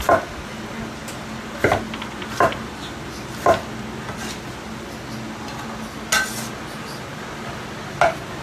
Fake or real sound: real